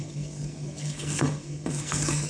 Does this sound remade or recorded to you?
remade